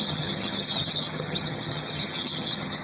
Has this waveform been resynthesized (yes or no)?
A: yes